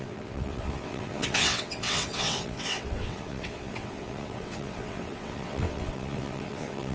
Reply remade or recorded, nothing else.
remade